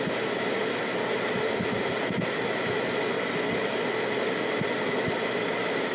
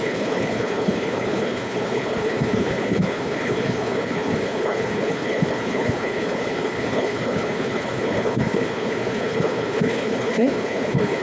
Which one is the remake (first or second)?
second